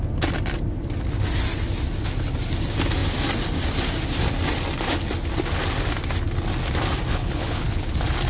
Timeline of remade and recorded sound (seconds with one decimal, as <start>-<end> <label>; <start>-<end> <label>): 0.0-7.1 recorded; 7.1-7.9 remade; 7.9-8.3 recorded